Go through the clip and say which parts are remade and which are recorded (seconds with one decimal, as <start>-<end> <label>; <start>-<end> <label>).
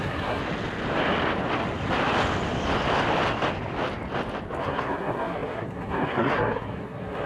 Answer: 0.0-0.4 remade; 0.4-4.6 recorded; 4.6-7.3 remade